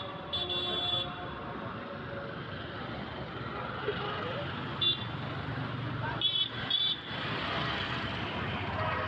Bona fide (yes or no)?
yes